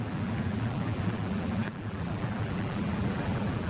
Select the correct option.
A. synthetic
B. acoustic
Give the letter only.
A